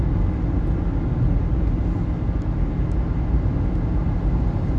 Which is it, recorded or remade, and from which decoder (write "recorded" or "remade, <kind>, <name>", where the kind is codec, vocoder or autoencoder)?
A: recorded